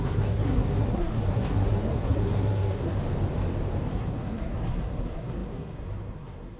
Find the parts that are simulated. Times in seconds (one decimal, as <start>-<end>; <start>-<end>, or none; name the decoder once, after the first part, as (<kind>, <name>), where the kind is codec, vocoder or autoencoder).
0.0-3.0 (codec, SNAC); 3.9-6.6